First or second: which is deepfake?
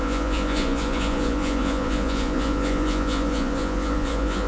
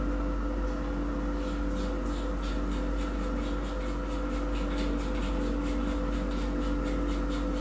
first